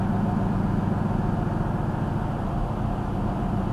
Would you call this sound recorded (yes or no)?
yes